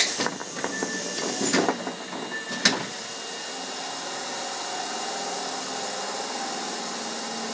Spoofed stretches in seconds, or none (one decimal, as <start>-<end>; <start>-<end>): none